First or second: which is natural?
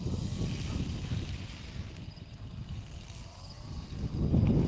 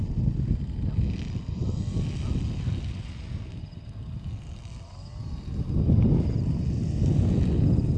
second